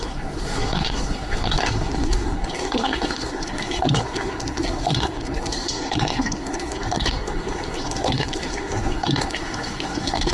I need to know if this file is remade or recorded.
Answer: remade